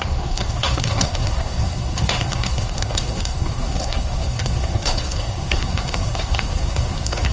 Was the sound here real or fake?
fake